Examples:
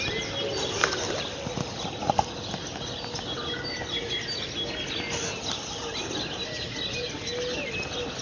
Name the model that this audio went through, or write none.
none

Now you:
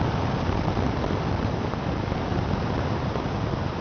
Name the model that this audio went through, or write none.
none